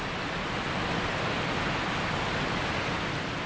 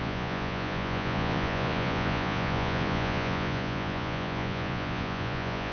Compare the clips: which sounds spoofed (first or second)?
second